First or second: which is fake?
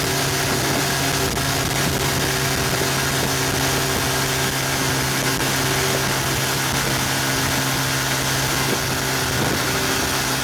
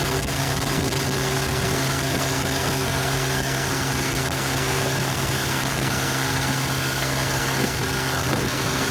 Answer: second